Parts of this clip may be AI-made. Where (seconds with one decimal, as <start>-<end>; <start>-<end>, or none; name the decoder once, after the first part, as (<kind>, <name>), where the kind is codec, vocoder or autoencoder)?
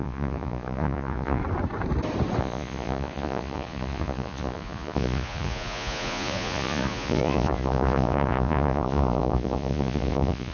0.0-1.4 (vocoder, Vocos); 2.4-10.5